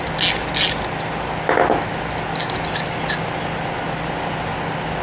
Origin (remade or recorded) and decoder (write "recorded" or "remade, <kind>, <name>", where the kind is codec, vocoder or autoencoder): recorded